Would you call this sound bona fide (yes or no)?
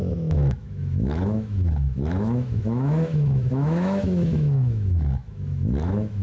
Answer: no